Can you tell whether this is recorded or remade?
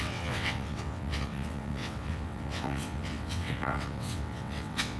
remade